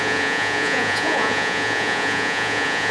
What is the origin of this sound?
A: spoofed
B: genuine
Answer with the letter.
A